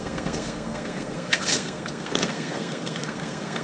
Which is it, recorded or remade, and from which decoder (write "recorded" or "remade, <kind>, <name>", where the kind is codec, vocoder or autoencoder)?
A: remade, codec, SNAC